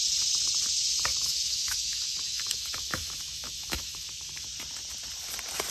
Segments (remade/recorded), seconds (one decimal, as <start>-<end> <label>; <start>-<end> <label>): 0.0-1.1 recorded; 1.1-4.5 remade; 4.5-5.7 recorded